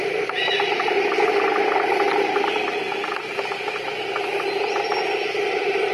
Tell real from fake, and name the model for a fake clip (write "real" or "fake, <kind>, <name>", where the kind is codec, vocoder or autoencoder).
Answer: real